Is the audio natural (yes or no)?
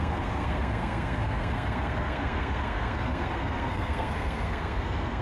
no